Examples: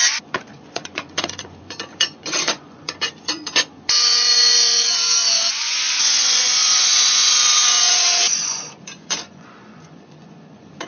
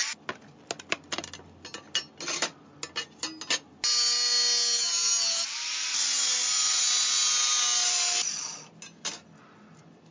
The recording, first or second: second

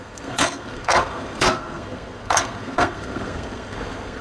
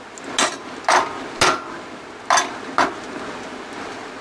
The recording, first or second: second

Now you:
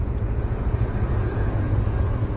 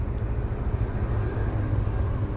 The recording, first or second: second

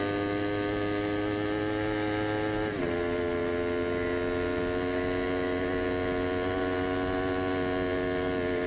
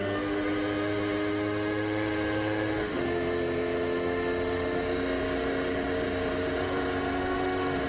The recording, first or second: first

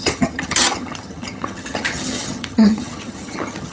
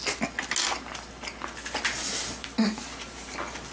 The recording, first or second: second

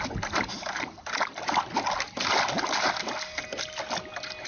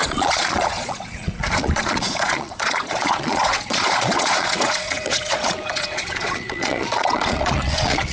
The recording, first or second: first